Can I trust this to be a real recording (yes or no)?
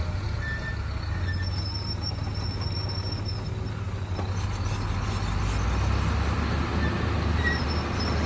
yes